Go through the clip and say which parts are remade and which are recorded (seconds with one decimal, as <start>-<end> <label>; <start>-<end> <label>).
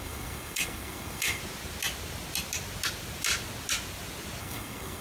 0.0-1.4 remade; 1.4-4.4 recorded; 4.4-5.0 remade